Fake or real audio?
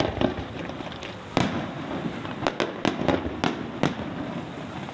real